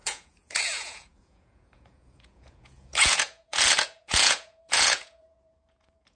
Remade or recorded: remade